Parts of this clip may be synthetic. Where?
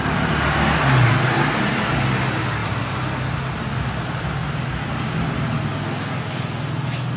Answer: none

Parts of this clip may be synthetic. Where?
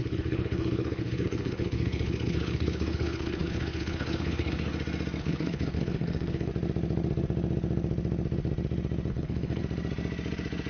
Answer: 0.0-4.7 (codec, HILCodec); 5.2-6.5; 9.1-9.6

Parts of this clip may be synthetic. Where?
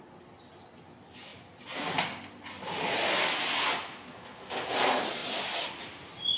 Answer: none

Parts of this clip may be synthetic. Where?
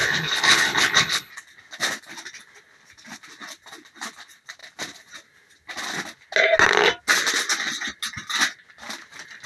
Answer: 0.0-1.3 (codec, HILCodec)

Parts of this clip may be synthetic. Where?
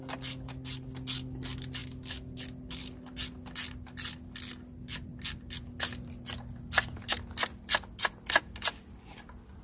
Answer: none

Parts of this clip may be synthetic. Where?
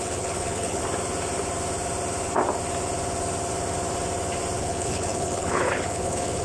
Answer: 0.0-0.8 (codec, HILCodec); 4.6-6.4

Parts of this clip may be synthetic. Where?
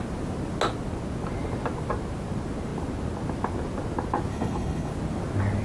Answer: 4.3-4.9 (codec, HILCodec)